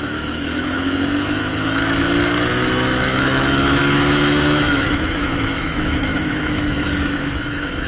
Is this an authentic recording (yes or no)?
no